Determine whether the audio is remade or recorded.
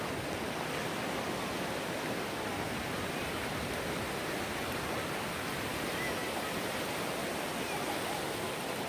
recorded